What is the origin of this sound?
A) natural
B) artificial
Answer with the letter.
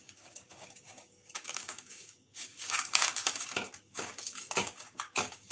B